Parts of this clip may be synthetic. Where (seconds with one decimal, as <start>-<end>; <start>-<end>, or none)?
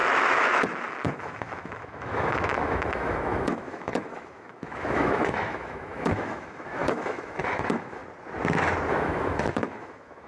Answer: 0.0-8.0; 8.9-10.3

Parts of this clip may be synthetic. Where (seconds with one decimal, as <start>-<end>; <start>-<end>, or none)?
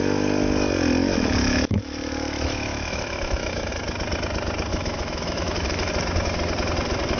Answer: 1.0-3.7; 4.7-5.9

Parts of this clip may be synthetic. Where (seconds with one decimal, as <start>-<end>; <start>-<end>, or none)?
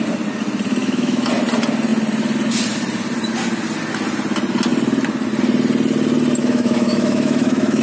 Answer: 0.8-1.3; 6.4-7.8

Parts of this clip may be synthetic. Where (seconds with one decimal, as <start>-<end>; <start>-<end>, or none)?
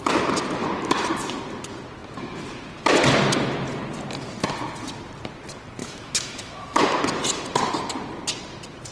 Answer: 5.8-6.8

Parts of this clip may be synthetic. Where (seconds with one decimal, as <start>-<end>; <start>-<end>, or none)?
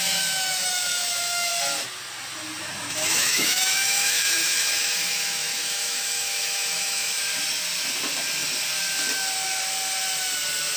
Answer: 0.0-1.5; 2.8-7.3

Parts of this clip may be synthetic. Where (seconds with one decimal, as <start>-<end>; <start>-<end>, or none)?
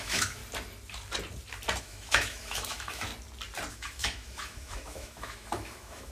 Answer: 0.0-0.4; 1.8-3.1; 3.7-6.1